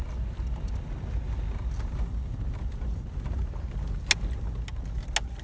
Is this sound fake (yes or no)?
no